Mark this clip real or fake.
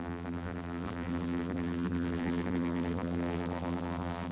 fake